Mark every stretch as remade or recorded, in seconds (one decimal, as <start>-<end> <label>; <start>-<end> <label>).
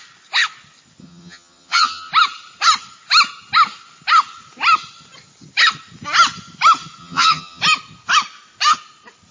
0.0-1.0 recorded; 1.0-2.1 remade; 2.1-7.0 recorded; 7.0-7.6 remade; 7.6-9.3 recorded